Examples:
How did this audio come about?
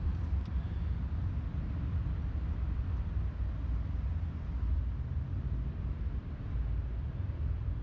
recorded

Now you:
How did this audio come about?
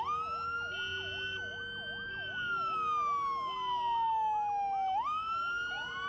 recorded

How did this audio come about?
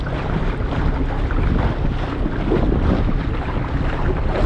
recorded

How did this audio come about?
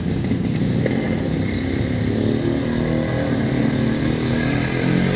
recorded